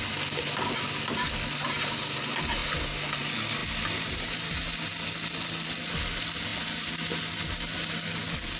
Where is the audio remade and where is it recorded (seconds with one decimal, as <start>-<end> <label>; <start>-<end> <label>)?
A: 0.0-8.6 recorded